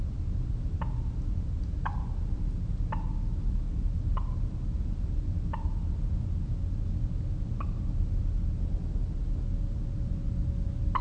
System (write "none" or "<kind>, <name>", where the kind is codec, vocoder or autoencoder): none